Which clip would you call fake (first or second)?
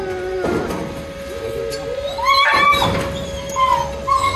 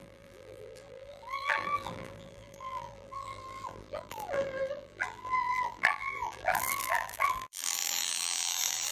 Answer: second